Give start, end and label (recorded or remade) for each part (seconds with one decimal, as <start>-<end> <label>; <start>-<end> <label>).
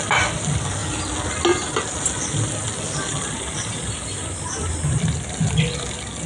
0.0-6.3 recorded